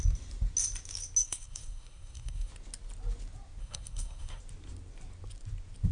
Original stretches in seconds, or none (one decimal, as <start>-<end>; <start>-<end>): 0.0-1.2; 2.5-3.6; 4.4-5.9